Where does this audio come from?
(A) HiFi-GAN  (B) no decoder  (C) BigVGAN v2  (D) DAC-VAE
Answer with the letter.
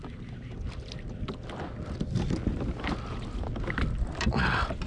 B